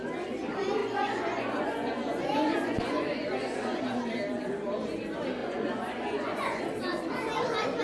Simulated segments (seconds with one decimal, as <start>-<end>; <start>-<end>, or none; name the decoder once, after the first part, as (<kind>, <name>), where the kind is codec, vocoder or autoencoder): 0.8-3.8 (vocoder, Vocos); 5.4-6.6